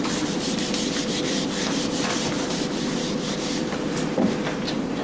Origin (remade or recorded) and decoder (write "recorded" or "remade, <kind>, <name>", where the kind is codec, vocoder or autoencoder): remade, vocoder, BigVGAN v2